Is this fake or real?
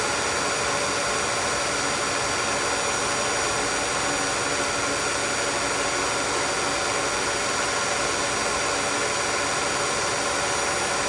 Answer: real